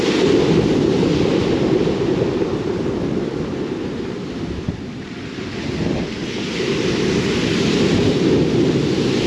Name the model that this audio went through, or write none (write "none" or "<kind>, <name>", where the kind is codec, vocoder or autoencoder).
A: none